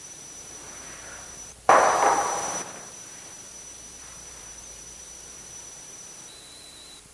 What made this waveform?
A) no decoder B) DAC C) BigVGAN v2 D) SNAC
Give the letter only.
C